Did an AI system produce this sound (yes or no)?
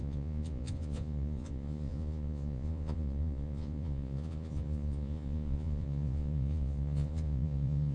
yes